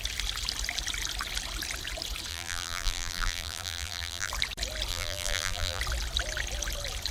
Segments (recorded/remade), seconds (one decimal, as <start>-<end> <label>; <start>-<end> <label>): 0.0-2.3 recorded; 2.3-4.3 remade; 4.3-4.9 recorded; 4.9-5.8 remade; 5.8-7.1 recorded